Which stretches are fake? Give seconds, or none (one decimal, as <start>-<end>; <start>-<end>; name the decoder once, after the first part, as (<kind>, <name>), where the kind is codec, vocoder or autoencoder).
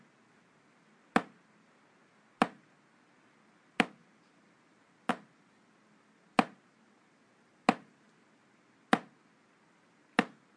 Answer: none